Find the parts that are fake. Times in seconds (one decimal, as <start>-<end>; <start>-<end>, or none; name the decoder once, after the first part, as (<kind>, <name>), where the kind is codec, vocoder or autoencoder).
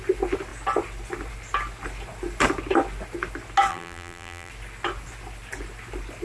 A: 3.7-4.5 (vocoder, BigVGAN v2)